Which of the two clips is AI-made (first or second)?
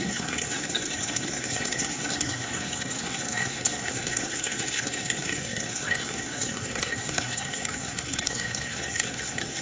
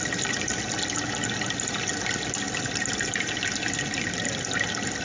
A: first